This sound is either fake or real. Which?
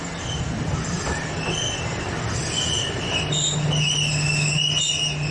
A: real